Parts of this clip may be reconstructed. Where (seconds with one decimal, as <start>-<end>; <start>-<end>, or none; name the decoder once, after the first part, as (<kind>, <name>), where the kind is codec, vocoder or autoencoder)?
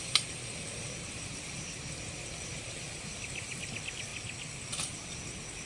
0.0-4.1 (vocoder, BigVGAN v2)